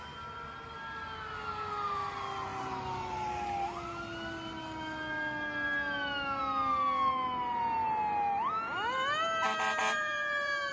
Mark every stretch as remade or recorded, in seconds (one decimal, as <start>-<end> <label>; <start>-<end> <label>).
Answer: 0.0-9.8 recorded; 9.8-10.7 remade